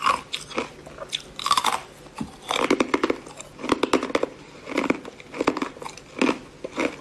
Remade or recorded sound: recorded